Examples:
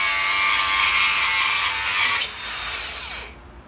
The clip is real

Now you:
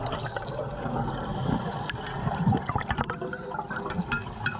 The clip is real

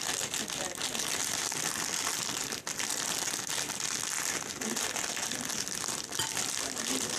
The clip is real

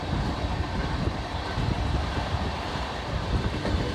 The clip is real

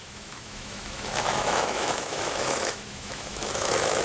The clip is fake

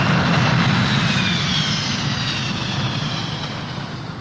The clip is real